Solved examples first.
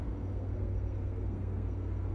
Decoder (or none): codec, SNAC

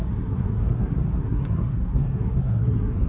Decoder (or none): codec, SNAC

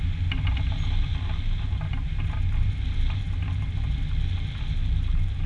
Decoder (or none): none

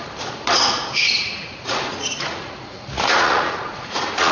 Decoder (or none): vocoder, Vocos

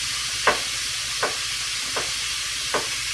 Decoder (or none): none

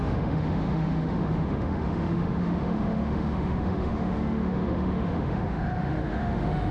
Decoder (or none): autoencoder, DAC-VAE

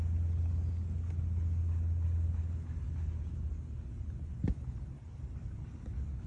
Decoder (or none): none